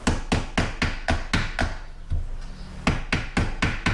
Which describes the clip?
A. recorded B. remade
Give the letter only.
A